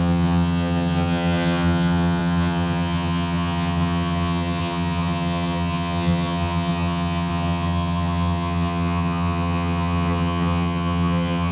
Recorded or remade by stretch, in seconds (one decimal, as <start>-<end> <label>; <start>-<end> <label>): 0.0-11.5 remade